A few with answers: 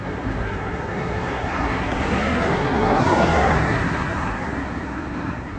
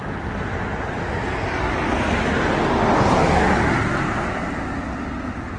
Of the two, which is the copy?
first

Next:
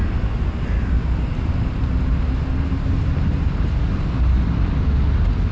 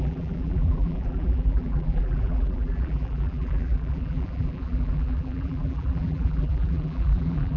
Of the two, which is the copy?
second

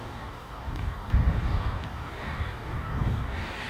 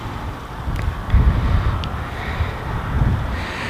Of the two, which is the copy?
first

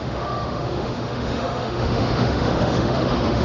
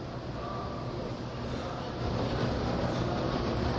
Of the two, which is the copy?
first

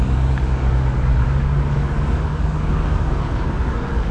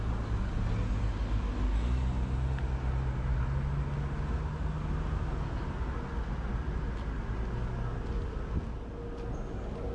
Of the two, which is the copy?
first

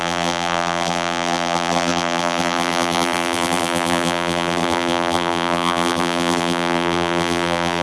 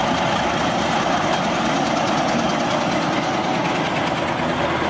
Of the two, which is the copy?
first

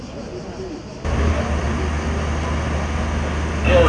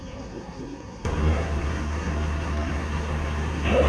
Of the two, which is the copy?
second